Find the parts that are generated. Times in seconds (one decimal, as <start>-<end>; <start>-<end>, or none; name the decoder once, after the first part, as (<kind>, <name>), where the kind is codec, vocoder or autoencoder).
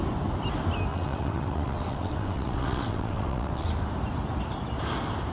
0.9-3.7 (vocoder, WaveNeXt)